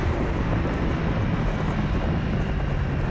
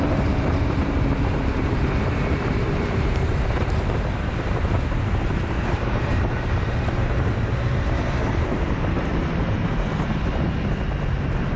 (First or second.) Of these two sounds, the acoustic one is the first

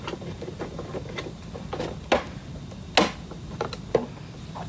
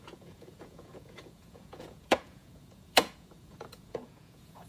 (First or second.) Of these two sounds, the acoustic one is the first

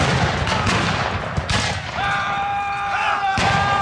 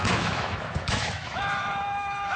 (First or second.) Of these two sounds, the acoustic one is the first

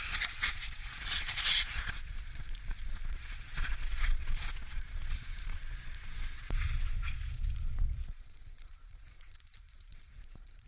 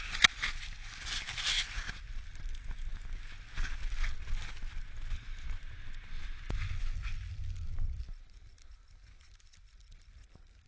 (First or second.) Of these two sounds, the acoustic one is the second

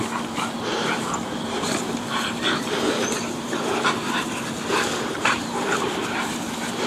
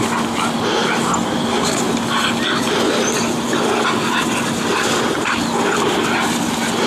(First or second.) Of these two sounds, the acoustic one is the second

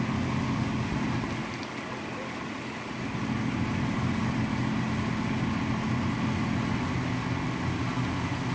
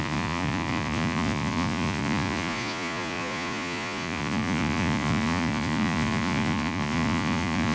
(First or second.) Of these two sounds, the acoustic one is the first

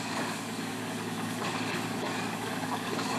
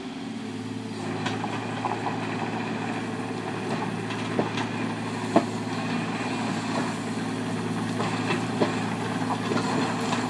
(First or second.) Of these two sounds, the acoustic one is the second